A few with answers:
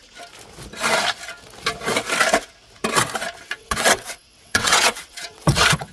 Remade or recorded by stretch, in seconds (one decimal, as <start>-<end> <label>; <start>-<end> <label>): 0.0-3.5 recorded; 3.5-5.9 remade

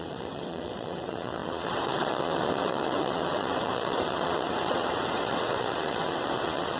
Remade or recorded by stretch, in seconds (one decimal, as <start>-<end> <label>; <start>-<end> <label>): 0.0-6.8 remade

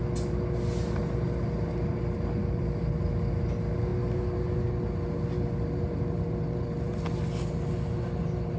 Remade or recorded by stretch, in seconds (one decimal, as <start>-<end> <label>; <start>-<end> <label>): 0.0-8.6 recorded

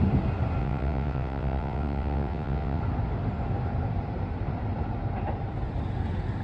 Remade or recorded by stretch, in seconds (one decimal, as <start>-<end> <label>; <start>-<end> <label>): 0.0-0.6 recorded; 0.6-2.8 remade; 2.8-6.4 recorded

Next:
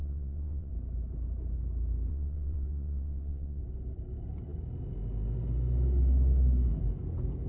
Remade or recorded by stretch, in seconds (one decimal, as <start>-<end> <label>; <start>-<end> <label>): 0.0-0.7 remade; 0.7-2.1 recorded; 2.1-3.6 remade; 3.6-7.5 recorded

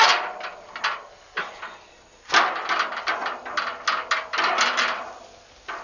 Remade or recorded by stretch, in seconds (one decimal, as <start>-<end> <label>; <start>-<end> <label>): 0.0-5.8 recorded

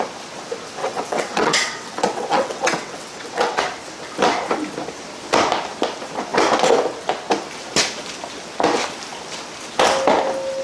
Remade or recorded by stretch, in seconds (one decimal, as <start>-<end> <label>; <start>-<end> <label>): 0.0-0.8 recorded; 0.8-3.6 remade; 3.6-10.6 recorded

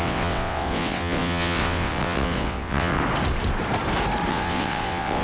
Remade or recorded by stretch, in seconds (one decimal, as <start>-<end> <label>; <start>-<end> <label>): 0.0-3.0 remade; 3.0-4.3 recorded; 4.3-5.2 remade